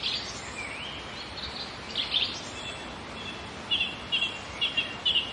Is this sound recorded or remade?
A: recorded